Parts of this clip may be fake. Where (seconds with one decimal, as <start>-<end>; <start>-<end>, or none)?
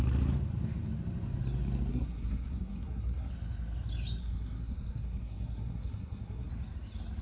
1.9-3.3; 4.2-6.5